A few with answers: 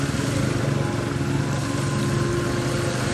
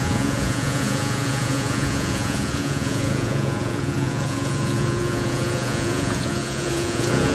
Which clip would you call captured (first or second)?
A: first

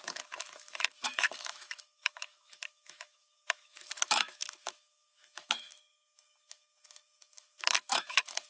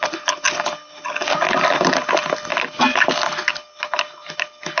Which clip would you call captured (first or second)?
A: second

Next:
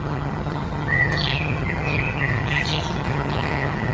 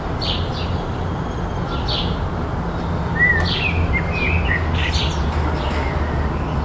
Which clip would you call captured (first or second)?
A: second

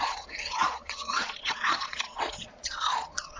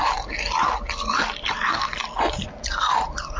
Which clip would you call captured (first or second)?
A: second